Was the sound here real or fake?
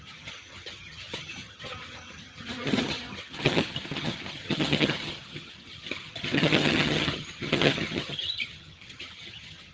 fake